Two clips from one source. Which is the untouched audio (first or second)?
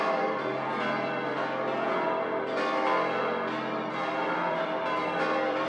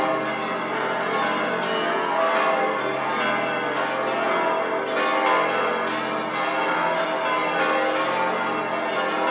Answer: second